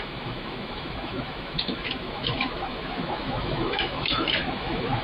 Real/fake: fake